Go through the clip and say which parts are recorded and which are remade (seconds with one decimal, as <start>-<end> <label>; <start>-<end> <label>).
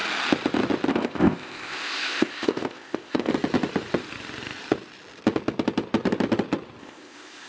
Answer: 0.0-0.9 recorded; 0.9-3.3 remade; 3.3-6.8 recorded; 6.8-7.5 remade